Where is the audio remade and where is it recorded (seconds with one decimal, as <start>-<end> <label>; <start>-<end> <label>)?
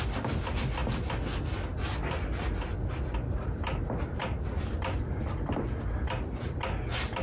0.0-4.2 recorded; 4.2-5.6 remade; 5.6-7.2 recorded